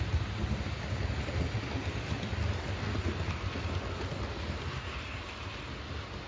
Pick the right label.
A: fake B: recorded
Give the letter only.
B